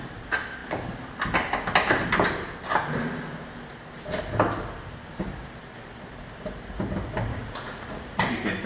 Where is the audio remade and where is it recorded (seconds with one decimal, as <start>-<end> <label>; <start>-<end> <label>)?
0.0-7.3 recorded; 7.3-8.2 remade; 8.2-8.7 recorded